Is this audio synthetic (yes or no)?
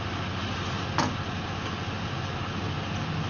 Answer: no